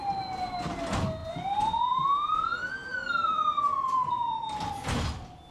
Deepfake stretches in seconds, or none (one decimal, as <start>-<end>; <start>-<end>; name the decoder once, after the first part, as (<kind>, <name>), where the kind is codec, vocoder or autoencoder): 1.2-1.8 (vocoder, BigVGAN v2); 2.8-4.3